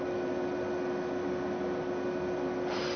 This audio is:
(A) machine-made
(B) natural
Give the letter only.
B